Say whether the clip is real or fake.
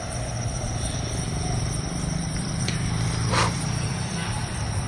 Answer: fake